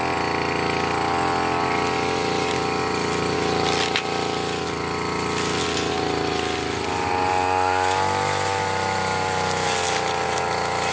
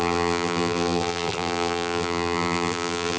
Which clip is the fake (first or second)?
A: second